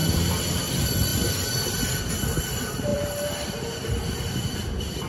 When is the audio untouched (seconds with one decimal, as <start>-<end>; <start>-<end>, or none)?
0.0-2.9; 4.2-5.1